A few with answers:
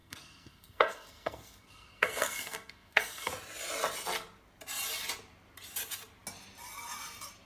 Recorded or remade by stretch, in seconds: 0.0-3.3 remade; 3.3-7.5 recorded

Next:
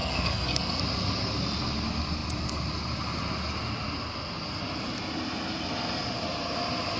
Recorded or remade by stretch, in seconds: 0.0-0.8 remade; 0.8-7.0 recorded